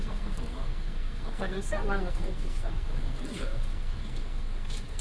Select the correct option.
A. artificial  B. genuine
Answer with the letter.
A